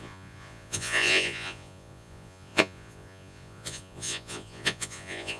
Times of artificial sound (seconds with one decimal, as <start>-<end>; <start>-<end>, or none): 0.0-5.4